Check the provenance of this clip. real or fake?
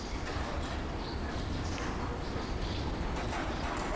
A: real